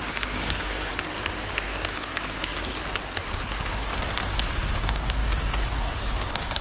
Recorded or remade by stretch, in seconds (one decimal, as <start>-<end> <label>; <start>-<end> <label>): 0.0-0.9 remade; 0.9-1.5 recorded; 1.5-2.5 remade; 2.5-4.5 recorded; 4.5-5.2 remade; 5.2-5.9 recorded; 5.9-6.6 remade